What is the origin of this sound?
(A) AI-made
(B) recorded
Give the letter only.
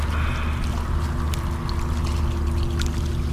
B